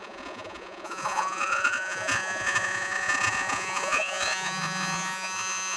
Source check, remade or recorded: remade